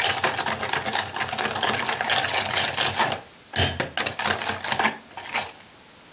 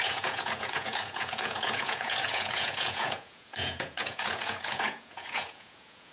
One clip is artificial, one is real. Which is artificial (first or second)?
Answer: second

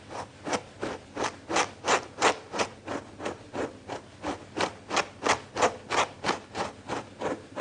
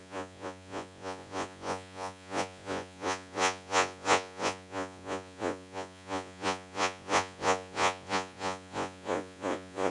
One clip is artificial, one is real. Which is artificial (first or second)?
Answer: second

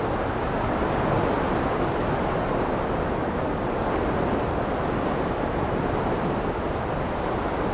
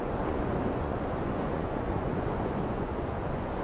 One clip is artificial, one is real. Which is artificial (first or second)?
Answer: second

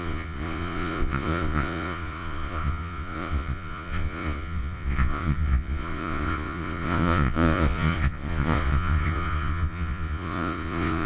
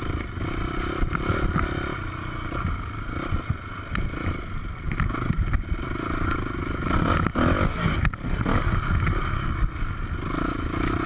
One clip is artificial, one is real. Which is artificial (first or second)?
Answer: first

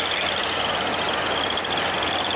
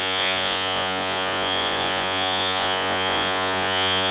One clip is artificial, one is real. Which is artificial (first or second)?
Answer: second